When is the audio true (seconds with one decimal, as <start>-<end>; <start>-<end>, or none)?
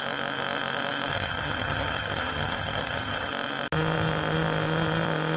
0.0-1.1; 3.3-5.4